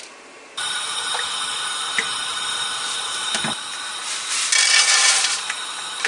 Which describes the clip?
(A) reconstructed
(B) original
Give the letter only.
A